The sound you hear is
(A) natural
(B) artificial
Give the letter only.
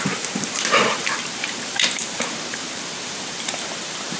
B